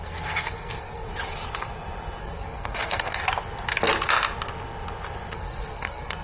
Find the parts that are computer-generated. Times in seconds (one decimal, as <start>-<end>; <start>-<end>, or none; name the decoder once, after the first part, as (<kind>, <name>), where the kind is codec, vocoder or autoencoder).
0.0-1.1 (codec, SNAC); 2.2-3.2; 5.3-6.2